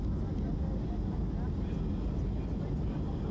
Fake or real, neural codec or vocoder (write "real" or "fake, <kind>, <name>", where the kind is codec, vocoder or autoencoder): real